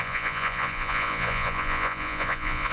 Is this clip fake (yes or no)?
yes